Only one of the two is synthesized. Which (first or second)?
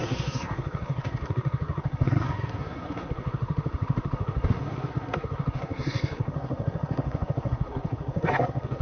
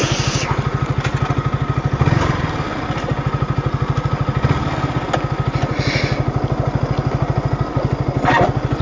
first